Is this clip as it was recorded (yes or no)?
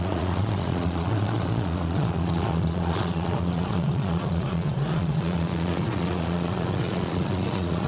no